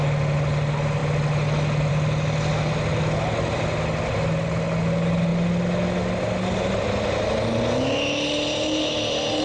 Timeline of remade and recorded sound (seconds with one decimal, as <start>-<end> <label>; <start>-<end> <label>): 0.0-9.4 recorded